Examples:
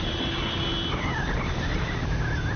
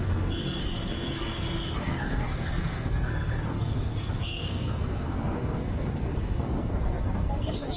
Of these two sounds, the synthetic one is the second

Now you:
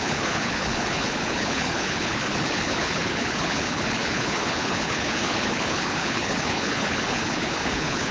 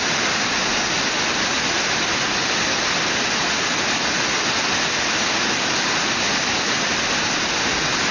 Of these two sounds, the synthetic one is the first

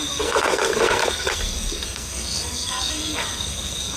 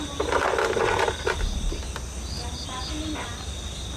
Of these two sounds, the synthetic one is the first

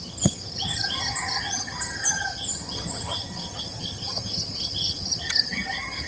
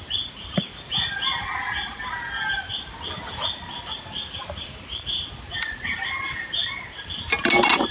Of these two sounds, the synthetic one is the first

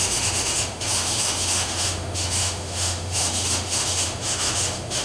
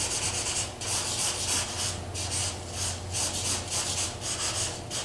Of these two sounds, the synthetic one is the first